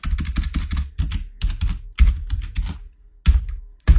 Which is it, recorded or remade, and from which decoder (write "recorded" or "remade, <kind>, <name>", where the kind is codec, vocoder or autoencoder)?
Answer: recorded